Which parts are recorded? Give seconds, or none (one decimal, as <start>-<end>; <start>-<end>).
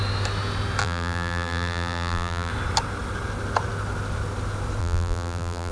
0.0-0.8; 2.5-4.8